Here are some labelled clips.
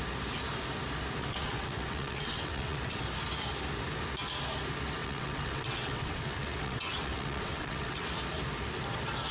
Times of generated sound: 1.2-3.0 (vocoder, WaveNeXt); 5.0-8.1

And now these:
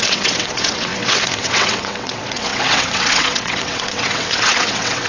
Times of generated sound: 0.0-5.1 (vocoder, WaveNeXt)